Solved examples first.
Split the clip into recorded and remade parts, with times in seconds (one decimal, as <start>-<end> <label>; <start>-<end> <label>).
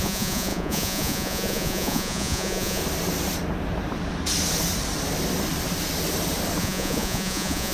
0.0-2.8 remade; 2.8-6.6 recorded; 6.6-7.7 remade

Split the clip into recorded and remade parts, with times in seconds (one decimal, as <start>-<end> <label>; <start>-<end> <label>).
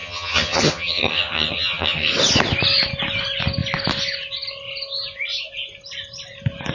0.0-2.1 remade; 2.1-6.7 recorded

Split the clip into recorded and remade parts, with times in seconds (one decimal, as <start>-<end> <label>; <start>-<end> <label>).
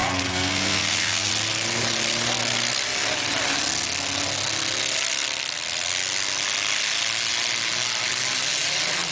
0.0-1.3 remade; 1.3-9.1 recorded